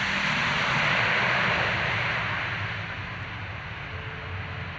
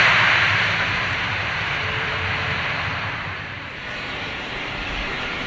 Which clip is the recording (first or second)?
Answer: first